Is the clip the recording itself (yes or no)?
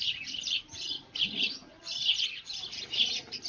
yes